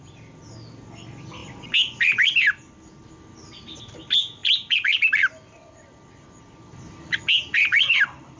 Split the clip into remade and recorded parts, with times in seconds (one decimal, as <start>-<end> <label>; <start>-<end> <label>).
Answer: 0.0-8.4 recorded